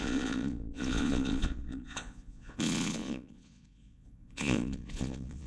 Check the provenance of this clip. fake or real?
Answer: fake